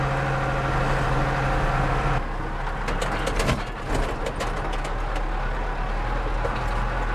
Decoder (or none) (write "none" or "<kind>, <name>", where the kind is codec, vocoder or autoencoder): none